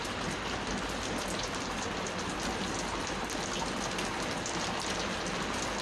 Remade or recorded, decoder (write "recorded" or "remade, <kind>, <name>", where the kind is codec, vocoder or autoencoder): recorded